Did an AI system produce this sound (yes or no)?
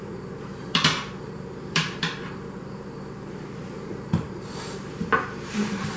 yes